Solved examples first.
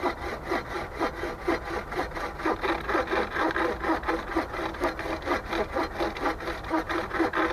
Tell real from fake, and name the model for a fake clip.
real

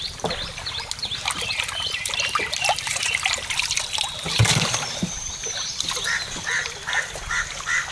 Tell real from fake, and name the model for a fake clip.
real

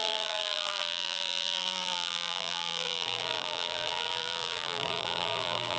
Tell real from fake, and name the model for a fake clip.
fake, vocoder, BigVGAN v2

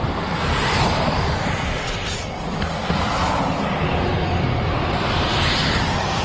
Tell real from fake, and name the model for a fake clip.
fake, vocoder, BigVGAN v2